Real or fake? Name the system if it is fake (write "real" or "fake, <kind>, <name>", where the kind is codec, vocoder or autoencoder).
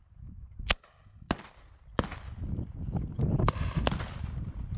real